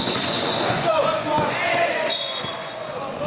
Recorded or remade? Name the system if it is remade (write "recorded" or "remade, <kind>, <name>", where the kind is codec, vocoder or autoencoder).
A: remade, vocoder, Vocos